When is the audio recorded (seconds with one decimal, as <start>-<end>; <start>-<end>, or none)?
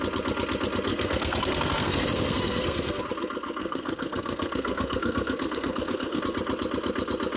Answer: 0.0-0.9; 3.0-3.6; 6.2-7.4